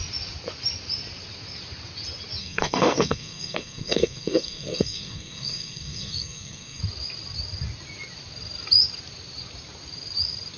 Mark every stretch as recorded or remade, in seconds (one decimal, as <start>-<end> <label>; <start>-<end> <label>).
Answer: 0.0-2.4 recorded; 2.4-6.8 remade; 6.8-10.6 recorded